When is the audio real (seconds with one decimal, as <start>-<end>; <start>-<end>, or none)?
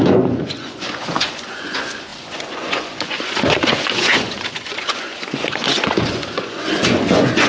none